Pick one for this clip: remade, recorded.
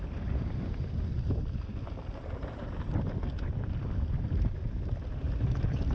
recorded